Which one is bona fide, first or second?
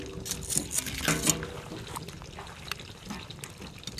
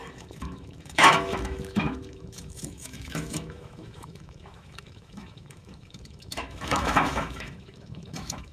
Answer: first